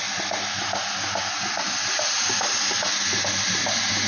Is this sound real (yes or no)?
yes